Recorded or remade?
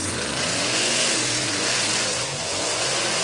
remade